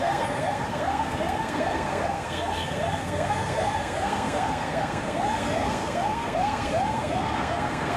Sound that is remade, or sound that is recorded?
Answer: remade